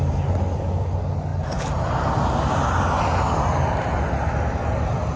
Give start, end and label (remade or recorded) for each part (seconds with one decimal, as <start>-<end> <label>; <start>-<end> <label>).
0.0-5.2 recorded